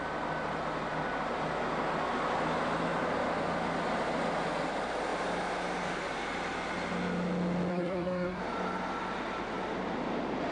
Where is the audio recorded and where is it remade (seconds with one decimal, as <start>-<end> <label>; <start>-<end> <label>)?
0.0-7.7 recorded; 7.7-8.4 remade; 8.4-10.5 recorded